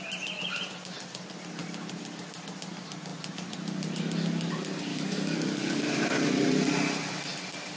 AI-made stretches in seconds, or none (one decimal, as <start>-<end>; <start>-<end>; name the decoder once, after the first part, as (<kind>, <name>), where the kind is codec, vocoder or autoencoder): 4.9-5.8 (codec, DAC)